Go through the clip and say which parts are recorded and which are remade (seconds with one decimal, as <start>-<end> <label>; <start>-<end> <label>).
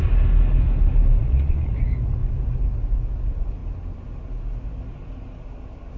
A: 0.0-1.2 recorded; 1.2-1.7 remade; 1.7-6.0 recorded